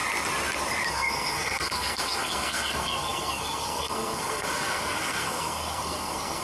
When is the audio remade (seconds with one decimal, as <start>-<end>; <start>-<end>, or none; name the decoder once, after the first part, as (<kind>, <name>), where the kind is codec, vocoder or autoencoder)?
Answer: 0.9-6.4 (codec, SNAC)